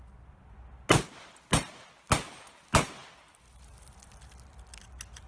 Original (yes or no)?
yes